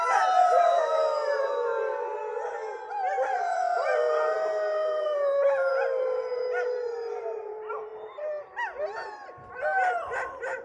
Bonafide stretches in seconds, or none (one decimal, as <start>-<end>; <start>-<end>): 7.9-9.5